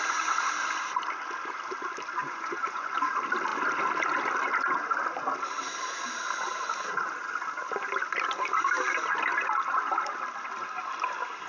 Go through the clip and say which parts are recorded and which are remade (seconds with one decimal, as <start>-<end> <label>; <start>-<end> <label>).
0.0-2.2 recorded; 2.2-3.1 remade; 3.1-11.5 recorded